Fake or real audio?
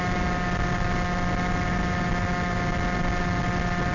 real